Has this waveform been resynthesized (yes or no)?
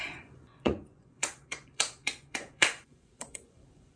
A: yes